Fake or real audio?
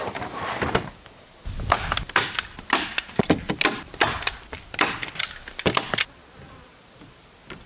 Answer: real